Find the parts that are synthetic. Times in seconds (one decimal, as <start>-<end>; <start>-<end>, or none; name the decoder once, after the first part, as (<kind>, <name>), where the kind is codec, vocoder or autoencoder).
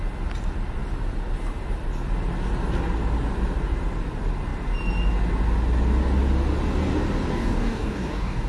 7.3-8.5 (codec, DAC)